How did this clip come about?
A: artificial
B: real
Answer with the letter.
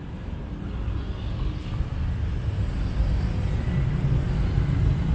B